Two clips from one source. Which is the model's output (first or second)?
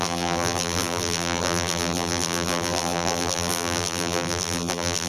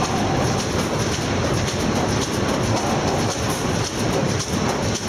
first